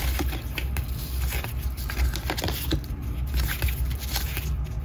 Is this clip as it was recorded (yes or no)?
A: yes